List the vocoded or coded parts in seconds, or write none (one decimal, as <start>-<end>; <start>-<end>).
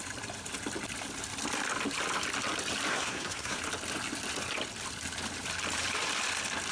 2.9-3.6